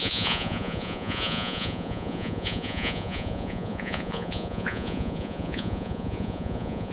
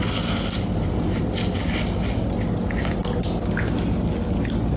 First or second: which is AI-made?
first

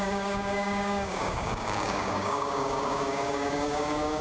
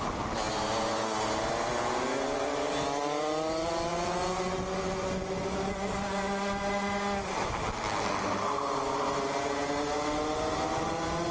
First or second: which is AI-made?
first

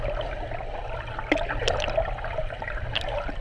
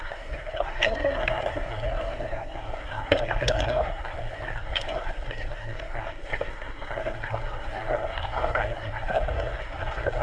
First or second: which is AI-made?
second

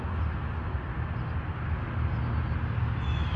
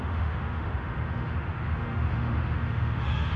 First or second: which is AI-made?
second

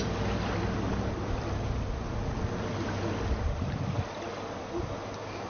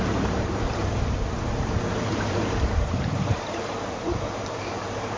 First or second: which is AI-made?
second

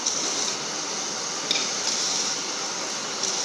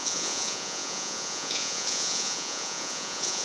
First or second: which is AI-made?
second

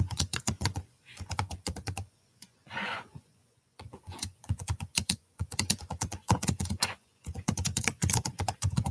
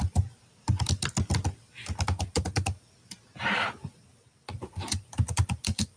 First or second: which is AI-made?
first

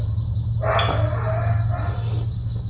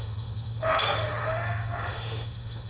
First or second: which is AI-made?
second